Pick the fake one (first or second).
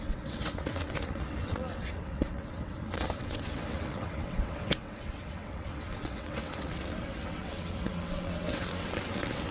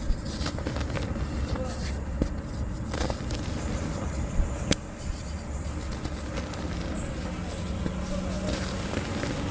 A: first